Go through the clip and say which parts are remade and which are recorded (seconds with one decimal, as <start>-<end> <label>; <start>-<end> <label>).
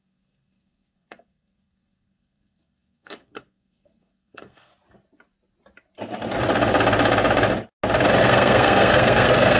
0.0-4.7 remade; 4.7-8.2 recorded; 8.2-9.6 remade